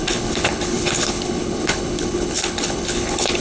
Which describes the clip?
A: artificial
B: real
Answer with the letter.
A